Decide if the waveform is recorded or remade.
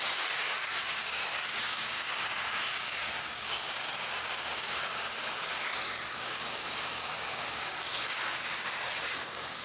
remade